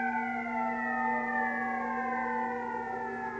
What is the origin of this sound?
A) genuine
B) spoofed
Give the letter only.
A